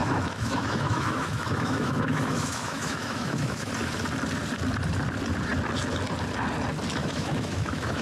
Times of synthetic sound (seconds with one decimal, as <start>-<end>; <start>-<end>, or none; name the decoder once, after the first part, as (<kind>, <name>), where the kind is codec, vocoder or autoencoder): 0.0-3.7 (autoencoder, DAC-VAE); 7.0-8.0